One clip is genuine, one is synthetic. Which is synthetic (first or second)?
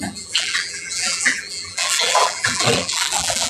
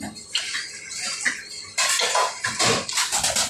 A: first